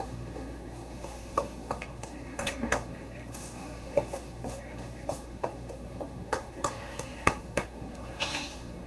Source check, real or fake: fake